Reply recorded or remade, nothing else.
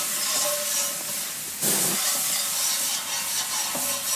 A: recorded